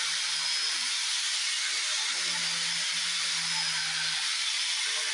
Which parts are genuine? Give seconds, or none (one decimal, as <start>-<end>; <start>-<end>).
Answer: 0.0-5.1